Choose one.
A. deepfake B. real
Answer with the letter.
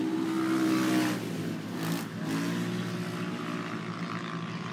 B